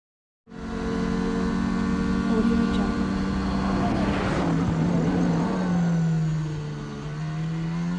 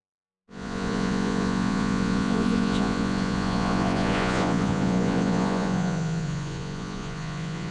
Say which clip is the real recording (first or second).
first